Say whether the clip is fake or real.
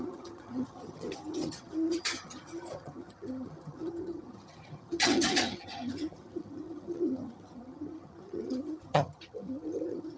fake